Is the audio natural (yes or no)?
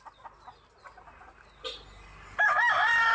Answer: yes